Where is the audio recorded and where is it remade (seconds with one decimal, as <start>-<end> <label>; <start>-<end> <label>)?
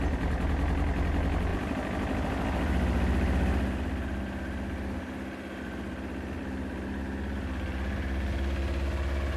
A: 0.0-9.4 recorded